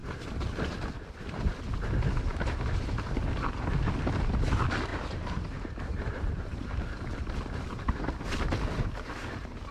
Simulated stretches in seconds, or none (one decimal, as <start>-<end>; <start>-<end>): 0.0-0.7; 2.3-3.2; 4.9-7.9